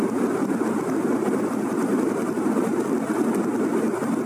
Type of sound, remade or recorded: remade